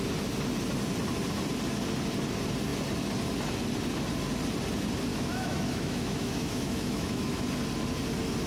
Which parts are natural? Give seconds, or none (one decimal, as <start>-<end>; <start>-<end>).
0.0-5.1; 7.4-8.5